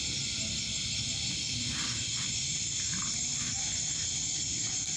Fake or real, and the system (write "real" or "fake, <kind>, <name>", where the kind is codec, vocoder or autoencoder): real